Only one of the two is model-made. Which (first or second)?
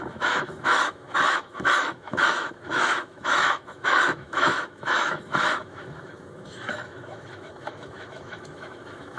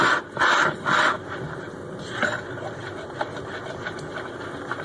first